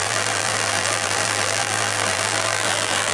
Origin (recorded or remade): remade